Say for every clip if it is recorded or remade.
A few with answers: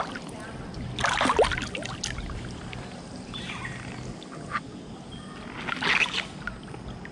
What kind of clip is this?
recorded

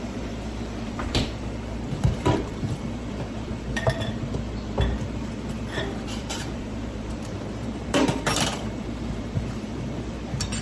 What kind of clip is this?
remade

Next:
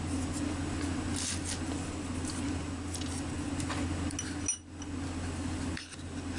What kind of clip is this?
recorded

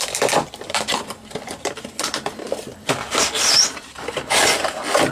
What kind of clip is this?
remade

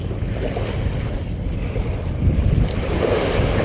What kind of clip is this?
remade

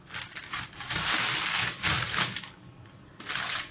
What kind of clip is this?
recorded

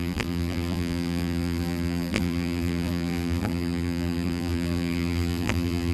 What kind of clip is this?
remade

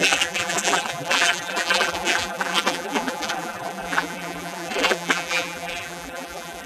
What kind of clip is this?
remade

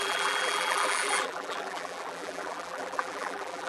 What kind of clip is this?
remade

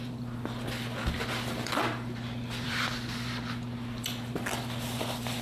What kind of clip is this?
remade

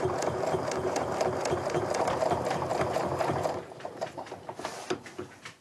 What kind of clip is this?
remade